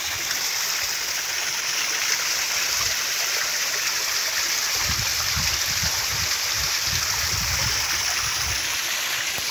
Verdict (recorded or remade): recorded